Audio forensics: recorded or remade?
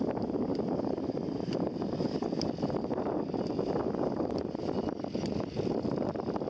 recorded